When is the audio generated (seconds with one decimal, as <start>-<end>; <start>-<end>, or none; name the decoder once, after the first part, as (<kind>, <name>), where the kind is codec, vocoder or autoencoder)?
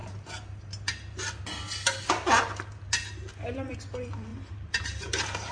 none